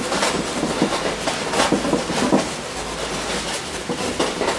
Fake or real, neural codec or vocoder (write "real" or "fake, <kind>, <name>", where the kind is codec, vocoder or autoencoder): real